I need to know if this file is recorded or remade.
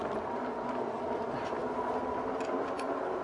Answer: recorded